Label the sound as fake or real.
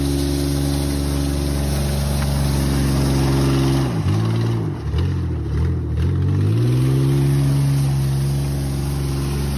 real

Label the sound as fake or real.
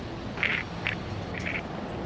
real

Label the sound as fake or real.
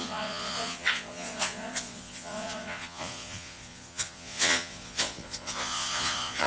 fake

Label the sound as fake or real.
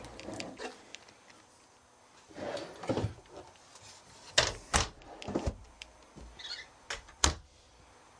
real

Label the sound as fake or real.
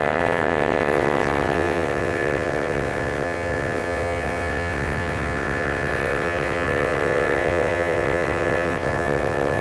fake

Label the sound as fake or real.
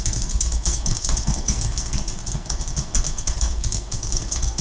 fake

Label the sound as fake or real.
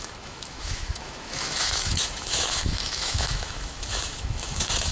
fake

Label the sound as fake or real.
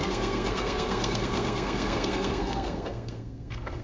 fake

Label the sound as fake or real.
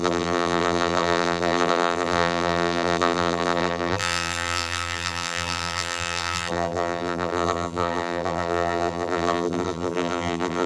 fake